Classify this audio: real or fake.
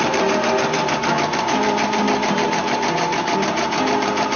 fake